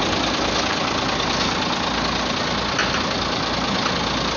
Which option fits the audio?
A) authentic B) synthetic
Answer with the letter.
A